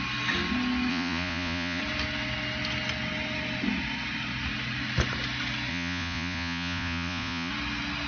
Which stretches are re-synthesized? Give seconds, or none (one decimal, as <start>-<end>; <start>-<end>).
0.9-1.8; 5.7-7.5